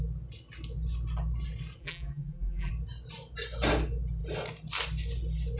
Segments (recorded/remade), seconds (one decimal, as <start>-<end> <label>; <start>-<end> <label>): 0.0-1.8 recorded; 1.8-2.7 remade; 2.7-5.6 recorded